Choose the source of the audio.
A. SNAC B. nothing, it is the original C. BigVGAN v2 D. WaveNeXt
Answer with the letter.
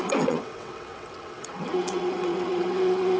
D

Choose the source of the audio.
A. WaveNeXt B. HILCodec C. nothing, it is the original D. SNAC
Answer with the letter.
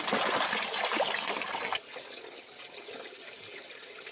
C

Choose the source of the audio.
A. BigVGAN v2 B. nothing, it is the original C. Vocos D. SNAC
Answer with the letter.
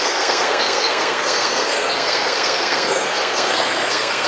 D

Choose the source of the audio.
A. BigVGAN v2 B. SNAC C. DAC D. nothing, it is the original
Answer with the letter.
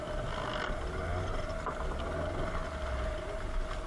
D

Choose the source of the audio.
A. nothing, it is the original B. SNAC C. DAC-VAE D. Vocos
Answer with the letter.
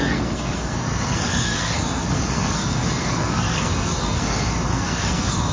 B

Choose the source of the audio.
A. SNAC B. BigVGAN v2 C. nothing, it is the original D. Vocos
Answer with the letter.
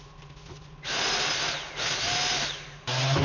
C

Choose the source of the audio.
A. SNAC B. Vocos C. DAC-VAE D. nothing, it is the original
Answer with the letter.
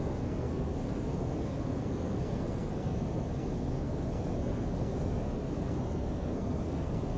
A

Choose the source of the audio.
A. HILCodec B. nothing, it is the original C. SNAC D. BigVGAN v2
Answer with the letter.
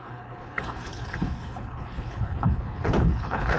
A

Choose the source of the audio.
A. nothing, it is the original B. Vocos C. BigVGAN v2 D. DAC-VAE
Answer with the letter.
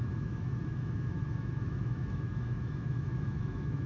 D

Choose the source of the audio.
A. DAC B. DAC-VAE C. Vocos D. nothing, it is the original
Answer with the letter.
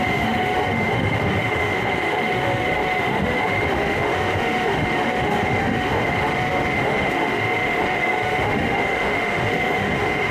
B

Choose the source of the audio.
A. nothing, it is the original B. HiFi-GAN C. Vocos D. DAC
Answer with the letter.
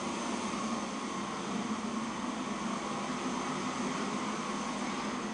A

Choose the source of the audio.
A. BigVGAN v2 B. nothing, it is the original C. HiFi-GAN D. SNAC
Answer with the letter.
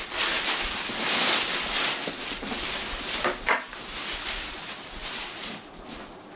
B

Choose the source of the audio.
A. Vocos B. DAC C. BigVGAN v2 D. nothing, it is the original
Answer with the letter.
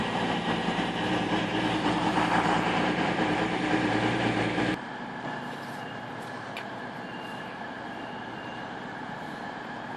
C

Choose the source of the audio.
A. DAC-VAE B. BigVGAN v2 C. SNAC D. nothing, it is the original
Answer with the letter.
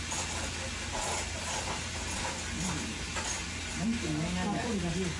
D